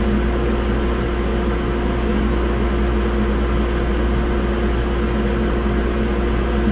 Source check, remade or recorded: recorded